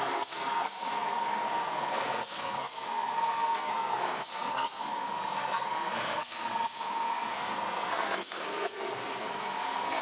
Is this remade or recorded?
remade